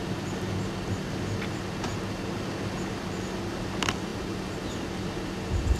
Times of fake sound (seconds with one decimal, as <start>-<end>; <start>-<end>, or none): 0.0-1.9; 3.5-5.8